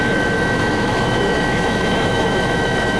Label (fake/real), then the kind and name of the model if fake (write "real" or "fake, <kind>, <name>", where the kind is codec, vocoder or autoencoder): fake, autoencoder, DAC-VAE